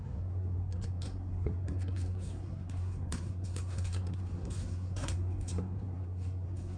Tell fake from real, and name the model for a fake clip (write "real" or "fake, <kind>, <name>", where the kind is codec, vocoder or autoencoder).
fake, codec, SNAC